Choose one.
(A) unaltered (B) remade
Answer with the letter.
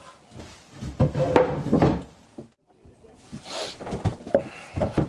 A